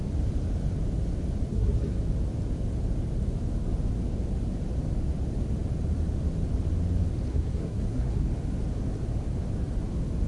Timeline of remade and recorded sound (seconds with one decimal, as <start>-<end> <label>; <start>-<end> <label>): 0.0-1.5 recorded; 1.5-2.0 remade; 2.0-7.3 recorded; 7.3-8.3 remade; 8.3-10.3 recorded